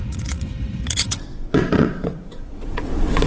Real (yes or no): no